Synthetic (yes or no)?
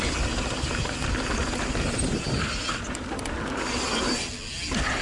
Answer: no